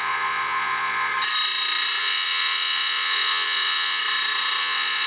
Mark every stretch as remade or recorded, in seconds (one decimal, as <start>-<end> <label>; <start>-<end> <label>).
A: 0.0-1.1 remade; 1.1-2.0 recorded; 2.0-4.0 remade; 4.0-4.6 recorded; 4.6-5.1 remade